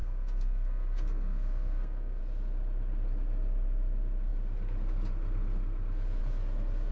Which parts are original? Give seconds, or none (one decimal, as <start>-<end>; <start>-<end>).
2.2-6.9